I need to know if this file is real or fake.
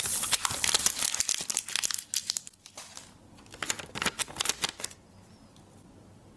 real